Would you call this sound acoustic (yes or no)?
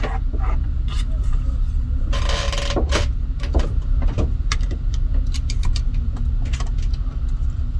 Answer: yes